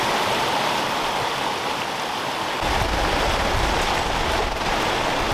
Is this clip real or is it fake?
real